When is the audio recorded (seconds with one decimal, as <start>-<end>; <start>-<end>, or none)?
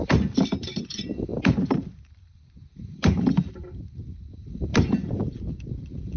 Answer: 0.0-0.5